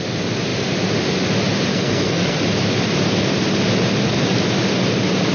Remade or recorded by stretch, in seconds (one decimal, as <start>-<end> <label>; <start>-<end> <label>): 0.0-1.7 recorded; 1.7-2.4 remade; 2.4-5.3 recorded

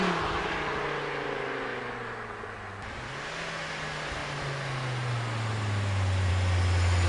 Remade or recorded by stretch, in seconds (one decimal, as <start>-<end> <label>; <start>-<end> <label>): 0.0-7.1 recorded

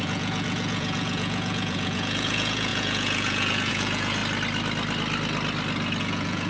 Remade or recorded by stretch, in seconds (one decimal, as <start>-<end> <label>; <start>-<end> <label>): 0.0-4.2 remade; 4.2-6.0 recorded; 6.0-6.5 remade

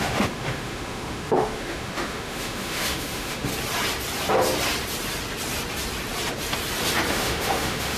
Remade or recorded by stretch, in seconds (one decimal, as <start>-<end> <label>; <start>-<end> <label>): 0.0-3.5 remade; 3.5-7.1 recorded; 7.1-8.0 remade

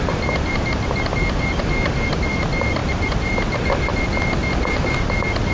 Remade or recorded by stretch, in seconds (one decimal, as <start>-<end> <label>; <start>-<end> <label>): 0.0-5.5 recorded

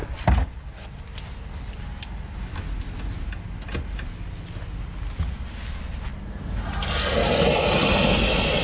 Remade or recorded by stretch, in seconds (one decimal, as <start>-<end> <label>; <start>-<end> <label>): 0.0-8.6 recorded